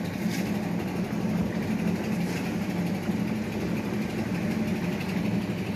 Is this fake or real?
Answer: real